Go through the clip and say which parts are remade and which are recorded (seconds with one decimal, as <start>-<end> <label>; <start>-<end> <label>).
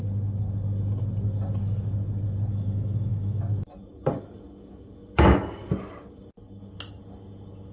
0.0-2.5 recorded; 2.5-3.4 remade; 3.4-7.7 recorded